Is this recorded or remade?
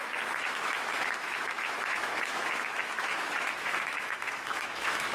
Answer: remade